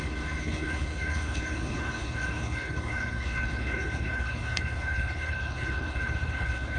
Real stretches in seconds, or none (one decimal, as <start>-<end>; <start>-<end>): none